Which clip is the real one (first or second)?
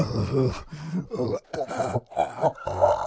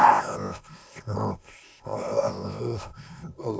first